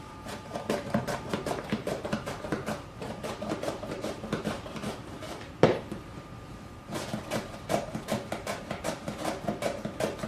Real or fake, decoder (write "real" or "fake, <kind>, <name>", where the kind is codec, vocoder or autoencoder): fake, vocoder, BigVGAN v2